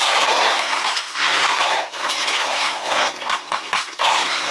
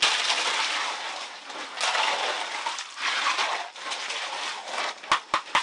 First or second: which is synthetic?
first